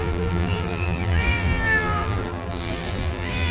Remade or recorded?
remade